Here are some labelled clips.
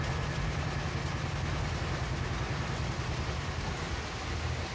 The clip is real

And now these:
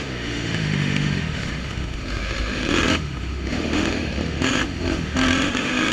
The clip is fake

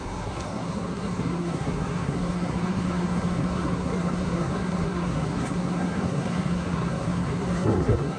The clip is fake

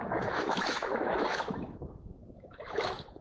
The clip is fake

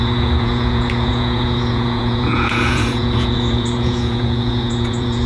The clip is fake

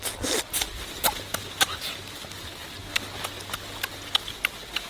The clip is real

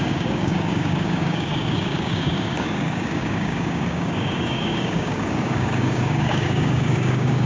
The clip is fake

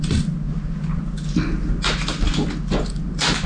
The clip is real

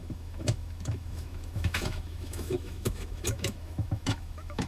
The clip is fake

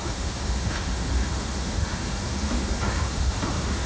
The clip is fake